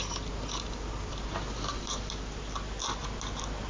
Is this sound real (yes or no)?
yes